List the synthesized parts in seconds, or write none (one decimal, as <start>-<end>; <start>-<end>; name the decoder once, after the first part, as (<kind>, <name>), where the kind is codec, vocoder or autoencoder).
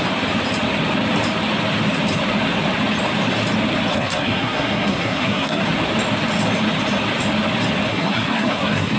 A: 3.9-5.6 (codec, SNAC); 7.9-9.0